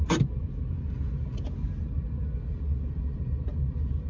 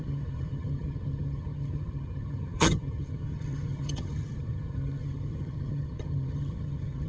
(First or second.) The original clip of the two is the first